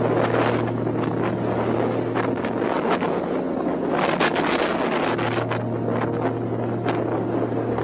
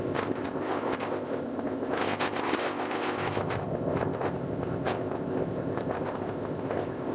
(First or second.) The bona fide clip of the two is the first